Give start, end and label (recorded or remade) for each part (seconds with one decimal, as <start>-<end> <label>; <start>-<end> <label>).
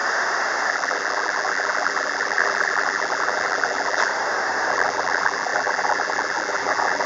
0.0-0.7 recorded; 0.7-4.1 remade; 4.1-4.7 recorded; 4.7-7.1 remade